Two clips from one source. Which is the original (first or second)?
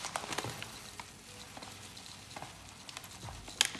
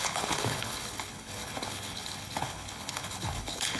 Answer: first